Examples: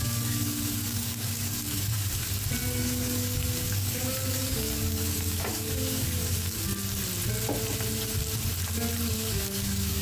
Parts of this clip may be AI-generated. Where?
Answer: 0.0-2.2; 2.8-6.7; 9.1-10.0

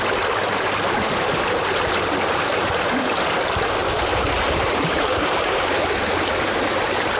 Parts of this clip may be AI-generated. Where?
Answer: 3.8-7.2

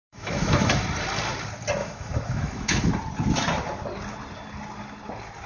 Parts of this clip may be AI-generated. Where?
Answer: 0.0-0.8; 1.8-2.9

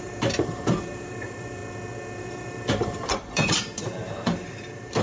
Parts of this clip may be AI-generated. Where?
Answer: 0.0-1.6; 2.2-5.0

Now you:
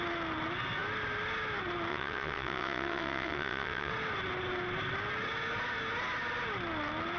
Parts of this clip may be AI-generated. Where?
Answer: 1.9-3.9

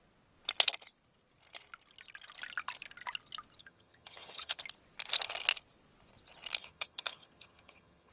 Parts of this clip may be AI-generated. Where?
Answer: 3.6-4.6; 6.6-8.1